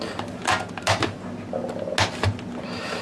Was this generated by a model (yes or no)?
no